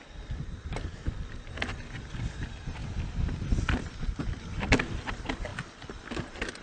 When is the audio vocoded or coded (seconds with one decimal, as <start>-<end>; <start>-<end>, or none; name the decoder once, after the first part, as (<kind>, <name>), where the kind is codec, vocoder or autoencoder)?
none